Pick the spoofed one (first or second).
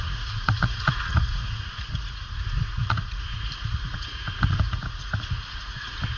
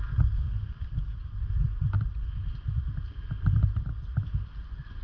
first